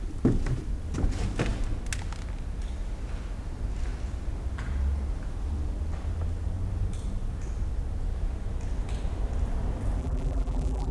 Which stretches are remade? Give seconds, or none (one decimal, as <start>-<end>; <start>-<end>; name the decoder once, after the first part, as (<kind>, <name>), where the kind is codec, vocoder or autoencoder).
10.0-10.9 (vocoder, BigVGAN v2)